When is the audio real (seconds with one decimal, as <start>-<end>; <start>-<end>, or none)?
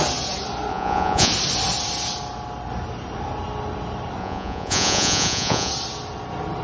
0.0-0.7; 1.3-4.2; 5.7-6.6